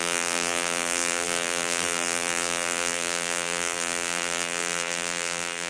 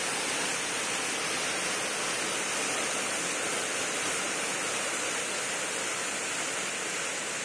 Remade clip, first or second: first